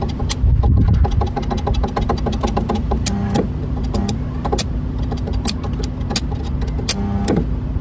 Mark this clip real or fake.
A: real